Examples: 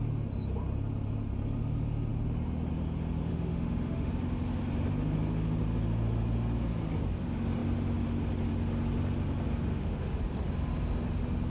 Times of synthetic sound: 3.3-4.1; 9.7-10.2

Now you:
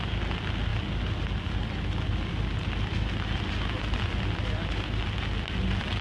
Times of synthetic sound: none

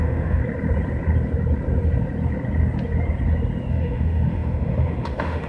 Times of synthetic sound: 0.0-0.4; 3.7-5.5

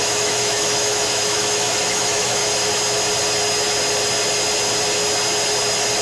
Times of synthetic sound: 0.0-2.4

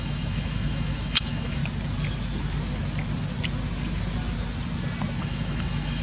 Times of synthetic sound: 0.0-1.6; 5.2-6.0

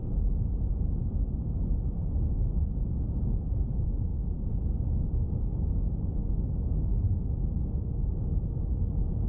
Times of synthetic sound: none

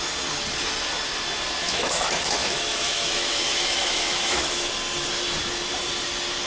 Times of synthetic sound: 1.6-4.7

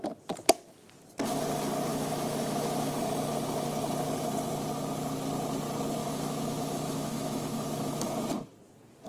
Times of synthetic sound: 1.9-2.9; 6.0-8.1